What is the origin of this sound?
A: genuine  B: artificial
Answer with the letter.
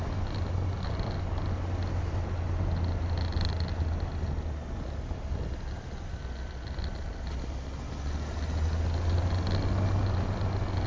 A